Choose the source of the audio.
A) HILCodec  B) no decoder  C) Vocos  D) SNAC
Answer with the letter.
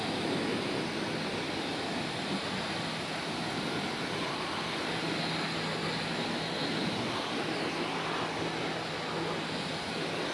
B